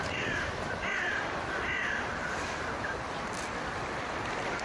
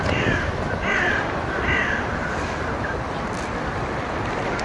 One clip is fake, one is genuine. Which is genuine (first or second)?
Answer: second